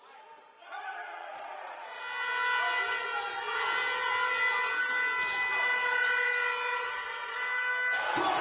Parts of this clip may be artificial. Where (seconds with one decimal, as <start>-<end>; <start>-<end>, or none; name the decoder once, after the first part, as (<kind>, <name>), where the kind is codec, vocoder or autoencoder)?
0.6-2.0 (vocoder, Vocos)